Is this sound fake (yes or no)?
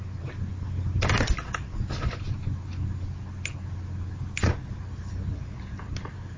no